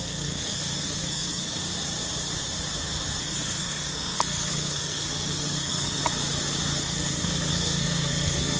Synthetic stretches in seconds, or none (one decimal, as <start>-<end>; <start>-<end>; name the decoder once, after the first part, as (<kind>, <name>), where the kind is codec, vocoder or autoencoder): 0.0-1.6 (codec, SNAC); 3.2-6.0; 6.8-8.6